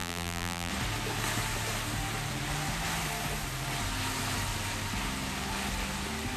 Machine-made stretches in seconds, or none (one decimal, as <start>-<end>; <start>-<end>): 0.0-0.7